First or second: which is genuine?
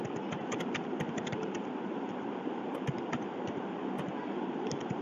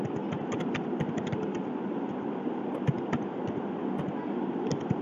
second